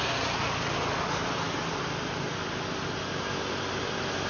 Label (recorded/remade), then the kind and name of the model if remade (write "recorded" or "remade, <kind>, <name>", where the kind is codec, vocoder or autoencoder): recorded